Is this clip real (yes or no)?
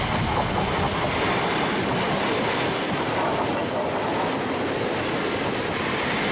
yes